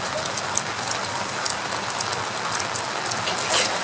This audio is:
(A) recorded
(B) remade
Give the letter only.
A